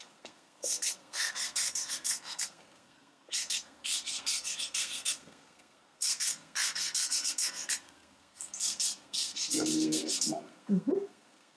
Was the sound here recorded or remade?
remade